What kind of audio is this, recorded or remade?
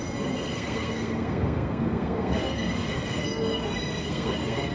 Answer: remade